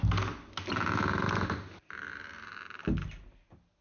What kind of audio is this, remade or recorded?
recorded